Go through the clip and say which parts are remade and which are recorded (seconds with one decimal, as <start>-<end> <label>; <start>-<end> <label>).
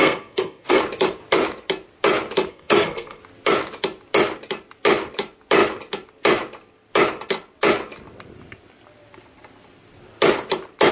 0.0-0.8 remade; 0.8-2.5 recorded; 2.5-3.2 remade; 3.2-10.9 recorded